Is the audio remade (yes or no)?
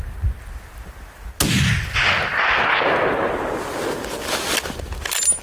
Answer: no